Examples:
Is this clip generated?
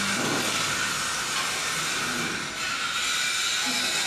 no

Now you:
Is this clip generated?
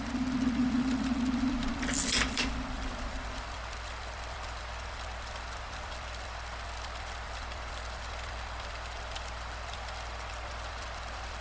yes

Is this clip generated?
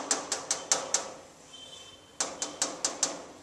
no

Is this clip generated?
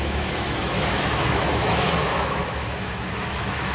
yes